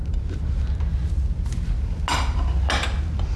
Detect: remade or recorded recorded